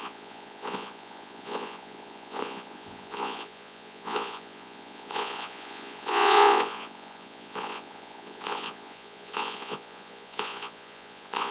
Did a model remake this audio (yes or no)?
yes